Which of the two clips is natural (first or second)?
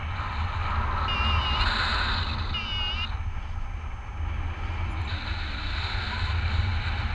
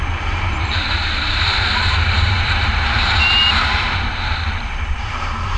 first